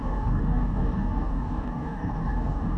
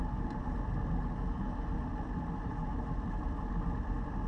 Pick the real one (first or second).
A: second